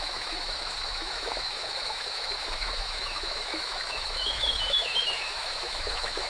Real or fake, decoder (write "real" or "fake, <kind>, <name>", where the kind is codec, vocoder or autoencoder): fake, autoencoder, DAC-VAE